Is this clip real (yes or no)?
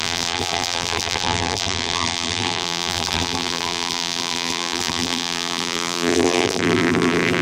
no